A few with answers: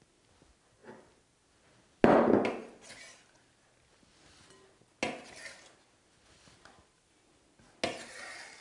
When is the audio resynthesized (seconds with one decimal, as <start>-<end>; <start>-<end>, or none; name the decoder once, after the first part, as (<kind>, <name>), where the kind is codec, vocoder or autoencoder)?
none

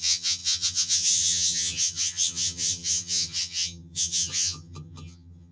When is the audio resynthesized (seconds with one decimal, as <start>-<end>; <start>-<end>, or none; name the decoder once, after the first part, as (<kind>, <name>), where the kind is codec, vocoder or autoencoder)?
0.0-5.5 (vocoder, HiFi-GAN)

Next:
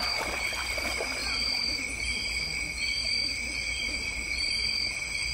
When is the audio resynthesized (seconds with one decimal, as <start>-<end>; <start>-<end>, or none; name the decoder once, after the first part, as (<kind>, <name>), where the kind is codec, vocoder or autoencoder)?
none